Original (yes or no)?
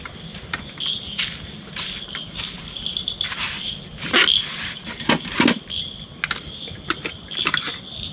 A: yes